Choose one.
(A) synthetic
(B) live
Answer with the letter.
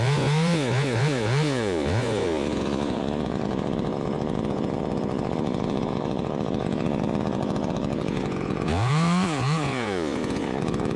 A